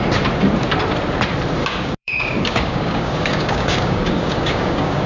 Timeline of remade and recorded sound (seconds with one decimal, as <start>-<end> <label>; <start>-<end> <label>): 0.0-1.6 recorded; 1.6-5.1 remade